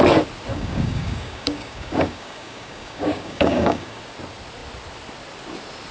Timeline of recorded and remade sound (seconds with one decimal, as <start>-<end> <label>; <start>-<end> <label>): 0.0-0.5 recorded; 0.5-4.0 remade; 4.0-5.9 recorded